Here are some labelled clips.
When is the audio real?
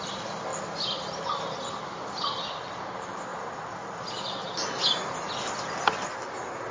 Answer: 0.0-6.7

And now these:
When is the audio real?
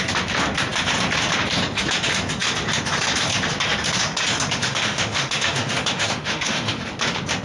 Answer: 0.0-4.6; 6.8-7.4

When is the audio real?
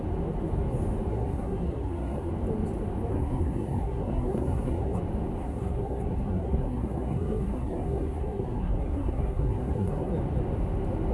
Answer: 0.0-1.1; 2.3-3.1; 5.0-5.4; 10.1-11.1